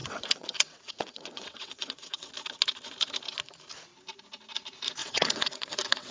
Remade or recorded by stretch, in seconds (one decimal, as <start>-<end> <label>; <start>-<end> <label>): 0.0-2.3 remade; 2.3-5.0 recorded; 5.0-6.1 remade